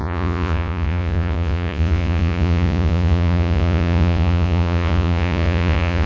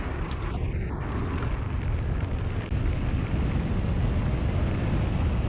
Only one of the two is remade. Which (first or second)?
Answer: first